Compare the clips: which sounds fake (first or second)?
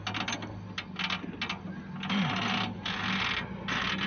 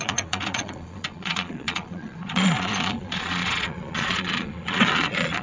second